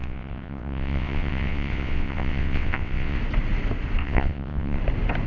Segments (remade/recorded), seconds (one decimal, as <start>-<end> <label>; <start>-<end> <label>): 0.0-3.2 remade; 3.2-4.0 recorded; 4.0-4.8 remade; 4.8-5.3 recorded